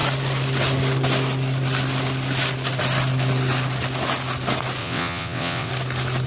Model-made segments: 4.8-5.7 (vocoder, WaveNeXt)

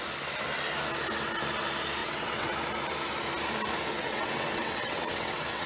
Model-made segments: 2.0-2.5 (vocoder, WaveNeXt); 4.0-5.7